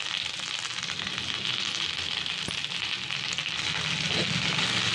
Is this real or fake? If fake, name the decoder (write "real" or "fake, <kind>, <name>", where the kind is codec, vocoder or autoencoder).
real